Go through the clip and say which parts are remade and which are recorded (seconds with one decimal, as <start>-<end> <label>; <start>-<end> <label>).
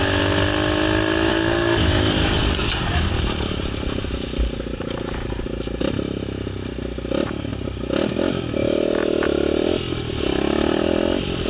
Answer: 0.0-1.3 recorded; 1.3-3.1 remade; 3.1-11.5 recorded